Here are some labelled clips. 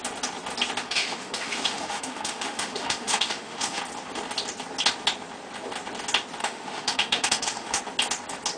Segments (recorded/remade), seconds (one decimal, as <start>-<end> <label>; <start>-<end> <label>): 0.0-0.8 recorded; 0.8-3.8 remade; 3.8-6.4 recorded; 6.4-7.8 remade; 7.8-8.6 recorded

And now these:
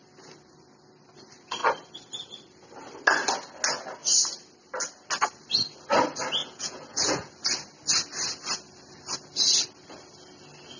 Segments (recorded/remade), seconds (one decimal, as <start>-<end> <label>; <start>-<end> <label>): 0.0-6.4 recorded; 6.4-7.3 remade; 7.3-10.8 recorded

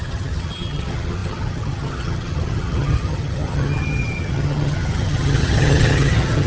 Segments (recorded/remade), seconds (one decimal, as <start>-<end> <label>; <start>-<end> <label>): 0.0-6.5 remade

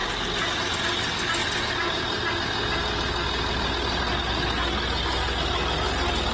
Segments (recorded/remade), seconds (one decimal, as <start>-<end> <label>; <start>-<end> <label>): 0.0-6.3 recorded